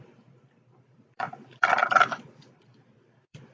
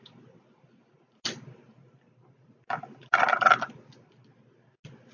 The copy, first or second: first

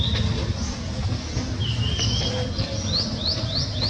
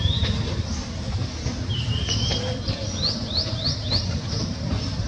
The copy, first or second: second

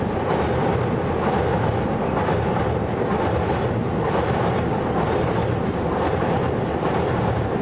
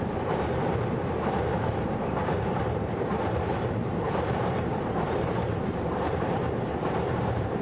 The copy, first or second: second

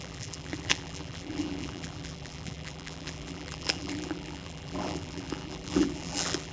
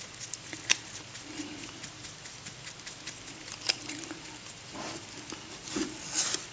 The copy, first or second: first